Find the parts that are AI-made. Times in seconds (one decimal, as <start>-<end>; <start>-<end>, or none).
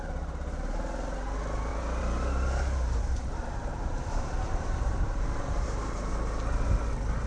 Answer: 1.7-6.1